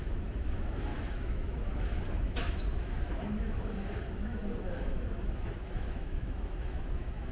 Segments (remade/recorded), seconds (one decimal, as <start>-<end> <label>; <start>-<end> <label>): 0.0-7.3 remade